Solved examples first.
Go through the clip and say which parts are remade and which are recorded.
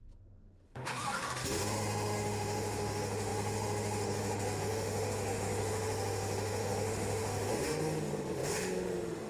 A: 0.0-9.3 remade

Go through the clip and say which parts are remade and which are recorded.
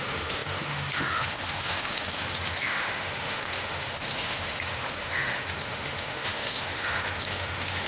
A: 0.0-7.9 remade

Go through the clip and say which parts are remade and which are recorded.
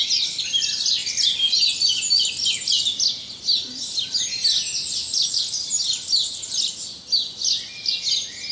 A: 0.0-8.5 recorded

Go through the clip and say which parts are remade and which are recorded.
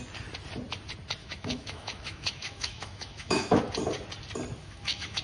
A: 0.0-1.2 recorded; 1.2-3.6 remade; 3.6-4.6 recorded; 4.6-5.2 remade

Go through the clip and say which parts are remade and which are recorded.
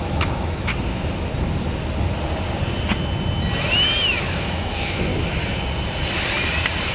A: 0.0-0.7 remade; 0.7-4.2 recorded; 4.2-5.1 remade; 5.1-6.9 recorded